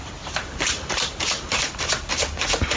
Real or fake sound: real